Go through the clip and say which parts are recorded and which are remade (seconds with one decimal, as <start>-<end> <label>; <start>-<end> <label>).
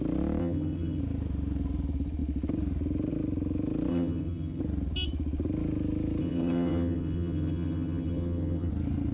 0.0-0.4 recorded; 0.4-1.0 remade; 1.0-3.9 recorded; 3.9-4.6 remade; 4.6-6.2 recorded; 6.2-8.7 remade; 8.7-9.1 recorded